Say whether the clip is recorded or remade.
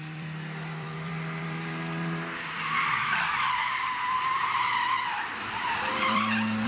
remade